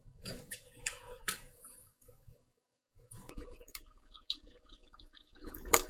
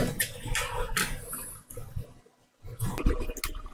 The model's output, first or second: first